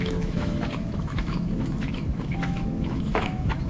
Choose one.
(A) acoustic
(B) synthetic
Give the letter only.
B